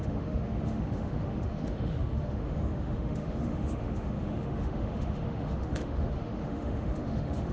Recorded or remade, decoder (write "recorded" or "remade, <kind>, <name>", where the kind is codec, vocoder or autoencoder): remade, autoencoder, DAC-VAE